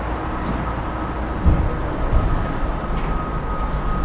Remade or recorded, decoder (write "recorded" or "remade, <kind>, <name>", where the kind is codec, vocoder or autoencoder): recorded